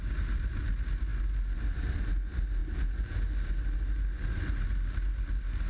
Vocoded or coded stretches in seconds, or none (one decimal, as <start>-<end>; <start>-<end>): none